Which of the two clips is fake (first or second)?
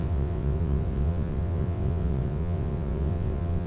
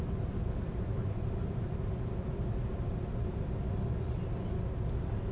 first